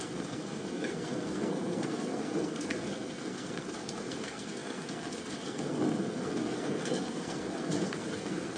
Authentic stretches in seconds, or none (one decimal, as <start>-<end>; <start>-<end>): none